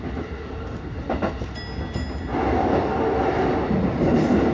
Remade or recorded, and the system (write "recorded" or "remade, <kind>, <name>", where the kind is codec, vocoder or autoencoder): recorded